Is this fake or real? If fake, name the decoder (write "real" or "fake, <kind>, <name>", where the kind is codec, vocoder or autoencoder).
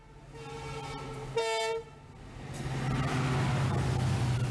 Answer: real